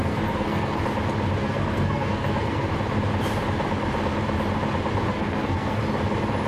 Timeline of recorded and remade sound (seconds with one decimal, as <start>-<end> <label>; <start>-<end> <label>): 0.0-0.8 remade; 0.8-1.4 recorded; 1.4-2.7 remade; 2.7-5.1 recorded; 5.1-5.8 remade; 5.8-6.5 recorded